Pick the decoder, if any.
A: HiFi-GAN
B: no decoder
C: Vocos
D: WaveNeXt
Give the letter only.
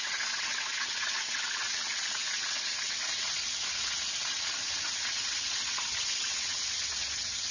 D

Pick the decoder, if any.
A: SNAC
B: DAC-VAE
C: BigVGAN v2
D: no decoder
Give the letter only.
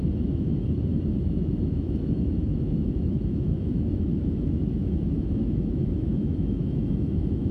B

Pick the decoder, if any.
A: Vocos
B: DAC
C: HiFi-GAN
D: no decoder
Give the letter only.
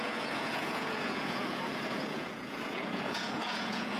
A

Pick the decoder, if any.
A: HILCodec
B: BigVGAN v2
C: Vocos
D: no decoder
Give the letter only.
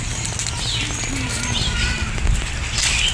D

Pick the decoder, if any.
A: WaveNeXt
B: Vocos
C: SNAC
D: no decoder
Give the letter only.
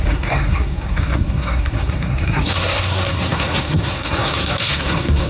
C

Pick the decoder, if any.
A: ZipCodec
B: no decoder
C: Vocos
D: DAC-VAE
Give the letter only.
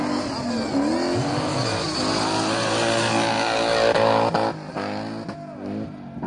B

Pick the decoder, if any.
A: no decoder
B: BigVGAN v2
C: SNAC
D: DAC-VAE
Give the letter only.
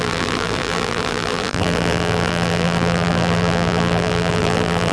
B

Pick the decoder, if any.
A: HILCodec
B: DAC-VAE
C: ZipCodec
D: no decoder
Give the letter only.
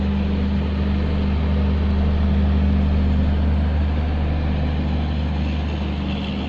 D